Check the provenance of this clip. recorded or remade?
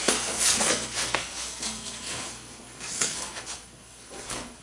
remade